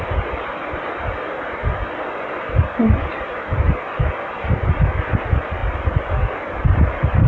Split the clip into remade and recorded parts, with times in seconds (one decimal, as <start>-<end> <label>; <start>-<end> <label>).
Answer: 0.0-5.6 recorded; 5.6-7.3 remade